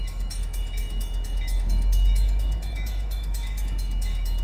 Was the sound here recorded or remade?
remade